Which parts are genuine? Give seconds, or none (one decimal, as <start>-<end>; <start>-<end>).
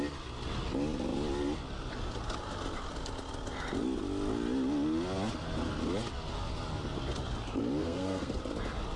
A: 0.0-7.8; 8.4-9.0